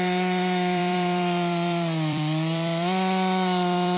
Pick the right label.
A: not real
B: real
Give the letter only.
A